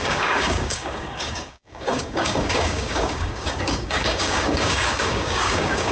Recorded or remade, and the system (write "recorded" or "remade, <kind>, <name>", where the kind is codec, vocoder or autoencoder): remade, codec, DAC